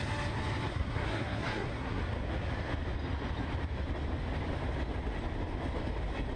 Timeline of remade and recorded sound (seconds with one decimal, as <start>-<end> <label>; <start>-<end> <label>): 0.0-0.7 recorded; 0.7-2.0 remade; 2.0-6.4 recorded